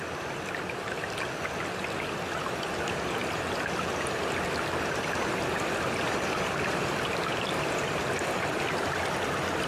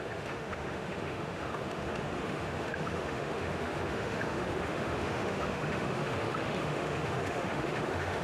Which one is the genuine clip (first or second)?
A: first